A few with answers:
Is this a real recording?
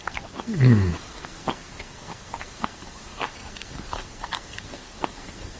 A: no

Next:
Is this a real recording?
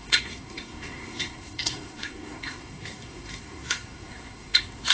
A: no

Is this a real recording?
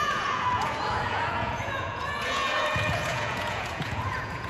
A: no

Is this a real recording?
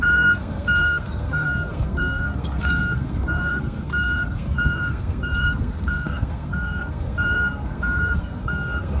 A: no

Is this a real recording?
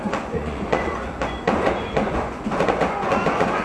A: no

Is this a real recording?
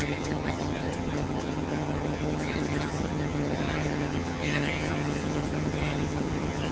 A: no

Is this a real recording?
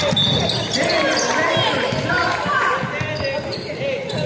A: yes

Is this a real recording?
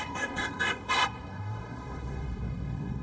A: no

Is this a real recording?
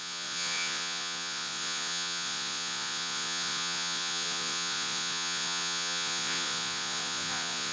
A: no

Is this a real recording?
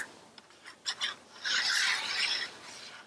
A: yes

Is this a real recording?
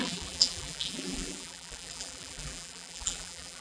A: no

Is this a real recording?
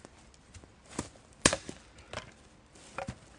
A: yes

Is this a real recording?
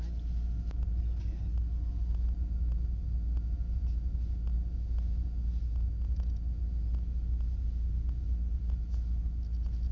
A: yes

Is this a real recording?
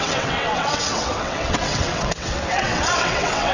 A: no